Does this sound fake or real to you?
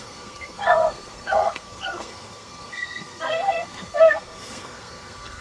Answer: fake